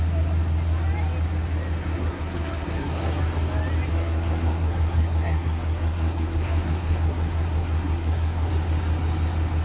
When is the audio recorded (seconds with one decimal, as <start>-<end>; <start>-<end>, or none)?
0.0-1.8; 3.2-3.9; 8.5-9.6